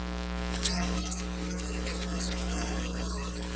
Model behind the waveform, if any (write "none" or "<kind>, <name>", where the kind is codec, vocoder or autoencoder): codec, SNAC